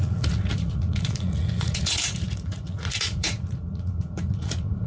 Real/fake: fake